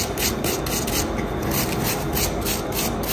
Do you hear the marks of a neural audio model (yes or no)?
no